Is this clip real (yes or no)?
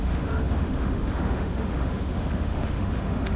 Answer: no